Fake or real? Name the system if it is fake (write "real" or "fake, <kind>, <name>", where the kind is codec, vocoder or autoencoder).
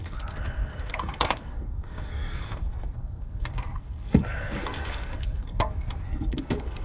fake, codec, SNAC